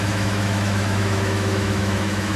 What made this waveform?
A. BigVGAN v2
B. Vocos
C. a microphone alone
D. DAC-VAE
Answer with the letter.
D